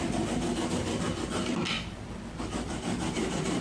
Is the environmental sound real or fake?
real